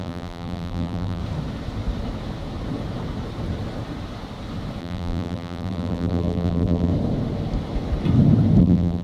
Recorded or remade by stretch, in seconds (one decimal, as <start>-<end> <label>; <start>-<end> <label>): 0.0-1.2 remade; 1.2-4.8 recorded; 4.8-6.9 remade; 6.9-8.6 recorded; 8.6-9.0 remade